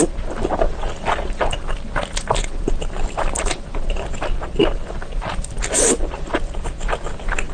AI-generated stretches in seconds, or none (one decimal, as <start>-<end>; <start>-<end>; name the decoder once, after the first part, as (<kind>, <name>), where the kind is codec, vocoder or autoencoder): none